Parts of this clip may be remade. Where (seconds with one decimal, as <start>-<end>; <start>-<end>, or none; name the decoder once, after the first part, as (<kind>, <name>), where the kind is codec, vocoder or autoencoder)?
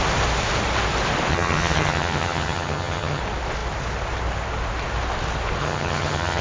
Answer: 1.3-3.2 (vocoder, HiFi-GAN); 5.6-6.4